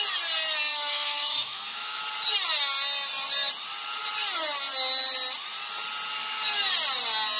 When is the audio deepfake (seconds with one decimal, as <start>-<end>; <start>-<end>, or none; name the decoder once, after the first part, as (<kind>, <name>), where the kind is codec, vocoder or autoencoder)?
0.7-2.0 (autoencoder, DAC-VAE)